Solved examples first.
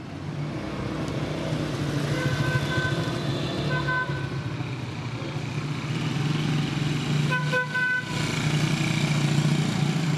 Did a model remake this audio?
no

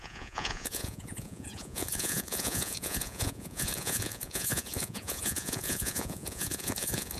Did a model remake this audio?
yes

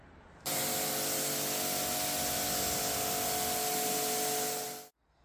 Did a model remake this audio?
no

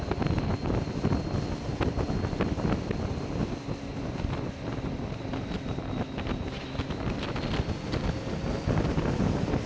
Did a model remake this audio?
no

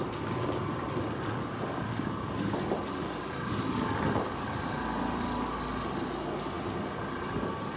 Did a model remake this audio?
no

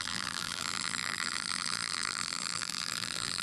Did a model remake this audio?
yes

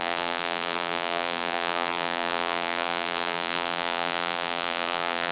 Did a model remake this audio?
yes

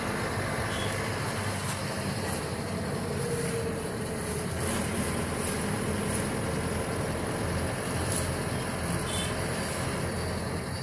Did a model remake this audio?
no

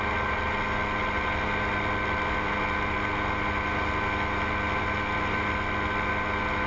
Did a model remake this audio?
no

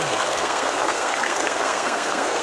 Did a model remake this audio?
yes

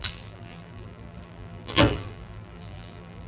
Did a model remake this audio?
yes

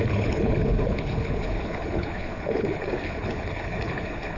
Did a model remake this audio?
yes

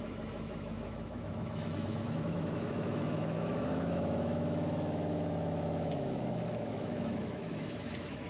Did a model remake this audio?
yes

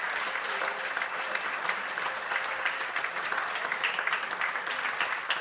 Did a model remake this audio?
no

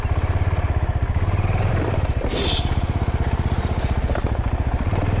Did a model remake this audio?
yes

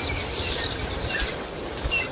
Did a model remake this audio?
no